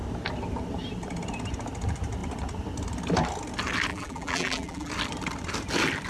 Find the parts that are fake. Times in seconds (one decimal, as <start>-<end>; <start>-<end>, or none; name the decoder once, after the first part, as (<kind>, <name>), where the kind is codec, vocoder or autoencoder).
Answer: 3.9-4.9 (vocoder, BigVGAN v2)